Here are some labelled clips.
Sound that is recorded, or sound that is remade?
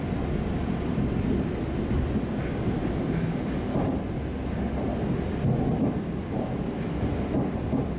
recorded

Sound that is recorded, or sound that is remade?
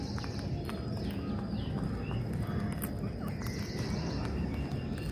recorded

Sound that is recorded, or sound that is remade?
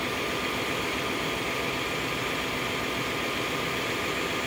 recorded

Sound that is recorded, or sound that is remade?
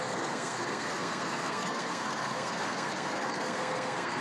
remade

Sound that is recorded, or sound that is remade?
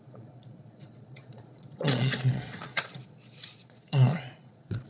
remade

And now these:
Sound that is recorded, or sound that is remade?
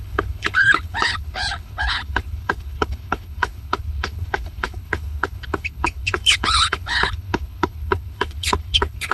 remade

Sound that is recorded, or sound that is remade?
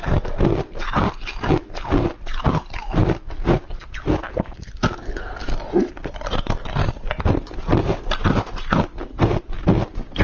recorded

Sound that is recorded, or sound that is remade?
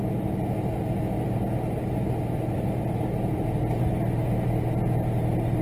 recorded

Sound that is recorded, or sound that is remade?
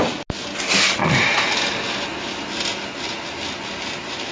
recorded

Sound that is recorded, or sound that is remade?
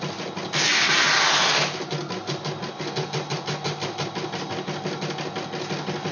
recorded